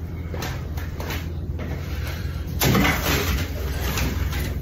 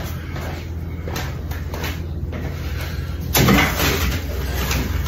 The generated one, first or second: first